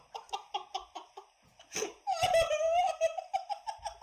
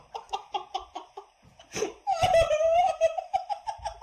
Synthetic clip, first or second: second